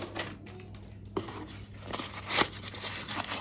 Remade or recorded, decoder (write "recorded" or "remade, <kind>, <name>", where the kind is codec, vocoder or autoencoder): recorded